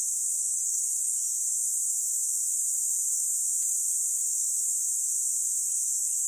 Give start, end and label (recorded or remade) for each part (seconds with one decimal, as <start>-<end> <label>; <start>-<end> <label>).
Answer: 0.0-0.5 recorded; 0.5-1.1 remade; 1.1-6.3 recorded